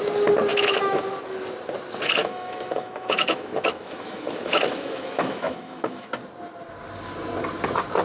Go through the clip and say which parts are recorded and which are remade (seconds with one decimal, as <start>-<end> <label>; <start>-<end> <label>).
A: 0.0-0.5 recorded; 0.5-1.0 remade; 1.0-2.2 recorded; 2.2-6.1 remade; 6.1-8.0 recorded